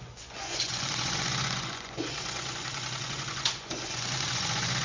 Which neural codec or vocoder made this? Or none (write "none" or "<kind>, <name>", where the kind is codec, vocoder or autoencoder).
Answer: vocoder, Vocos